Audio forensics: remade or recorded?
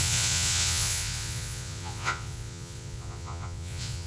remade